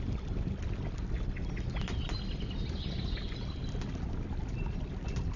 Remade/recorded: recorded